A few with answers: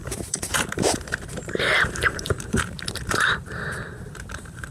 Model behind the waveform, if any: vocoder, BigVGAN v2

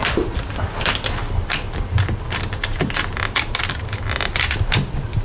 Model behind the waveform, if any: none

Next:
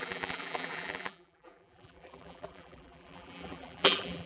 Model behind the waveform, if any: vocoder, BigVGAN v2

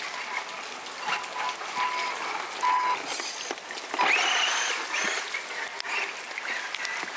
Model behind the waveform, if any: none